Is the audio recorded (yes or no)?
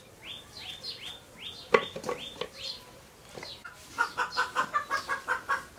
yes